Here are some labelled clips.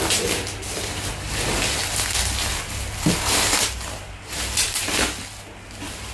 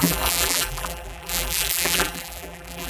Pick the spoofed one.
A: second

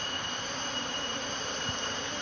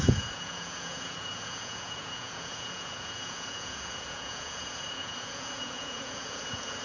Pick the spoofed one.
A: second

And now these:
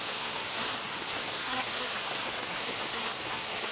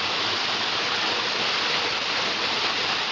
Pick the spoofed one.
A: first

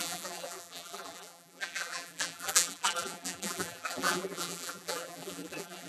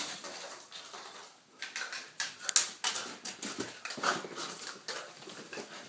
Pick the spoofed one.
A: first